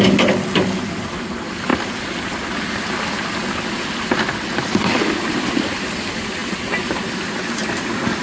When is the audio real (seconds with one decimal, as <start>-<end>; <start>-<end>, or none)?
0.0-8.2